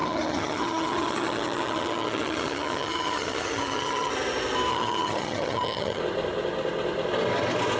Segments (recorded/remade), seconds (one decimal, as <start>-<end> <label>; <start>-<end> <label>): 0.0-4.1 remade; 4.1-4.7 recorded; 4.7-6.0 remade; 6.0-7.8 recorded